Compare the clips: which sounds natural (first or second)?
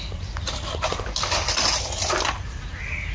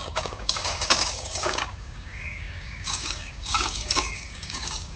first